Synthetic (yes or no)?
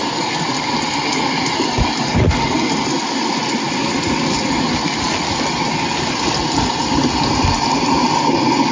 no